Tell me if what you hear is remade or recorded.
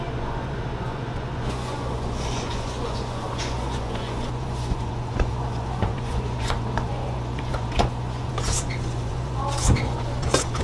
remade